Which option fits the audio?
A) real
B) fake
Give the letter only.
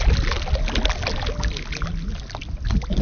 A